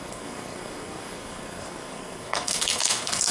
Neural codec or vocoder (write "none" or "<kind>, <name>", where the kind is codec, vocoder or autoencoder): codec, SNAC